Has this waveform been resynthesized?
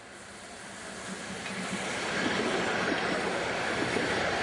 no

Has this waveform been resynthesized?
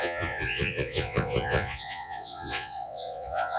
yes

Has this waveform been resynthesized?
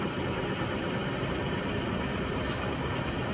no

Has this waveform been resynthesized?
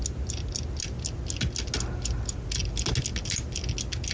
no